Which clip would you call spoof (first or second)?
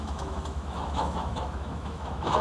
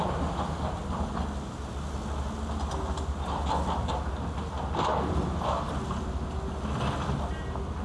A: first